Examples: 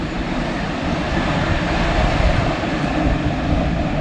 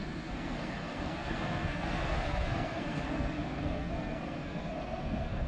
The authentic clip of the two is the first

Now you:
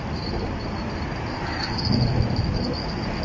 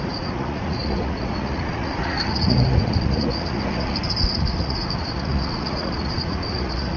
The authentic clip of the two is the first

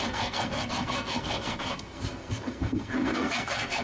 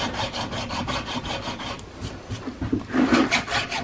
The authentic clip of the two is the second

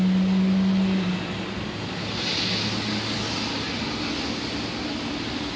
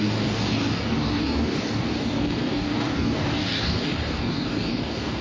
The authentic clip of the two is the first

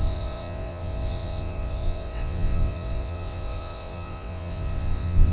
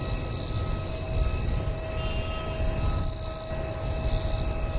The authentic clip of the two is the second